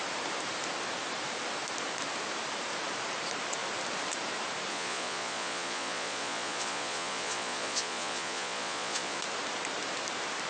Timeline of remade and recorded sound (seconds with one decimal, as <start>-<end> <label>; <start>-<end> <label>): 0.0-4.7 recorded; 4.7-9.2 remade; 9.2-10.5 recorded